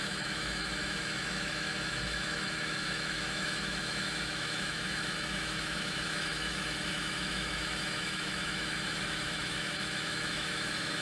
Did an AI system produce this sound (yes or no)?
yes